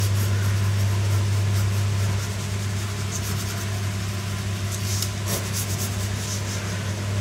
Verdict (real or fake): real